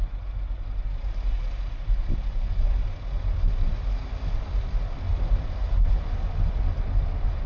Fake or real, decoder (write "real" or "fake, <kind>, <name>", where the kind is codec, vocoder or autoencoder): real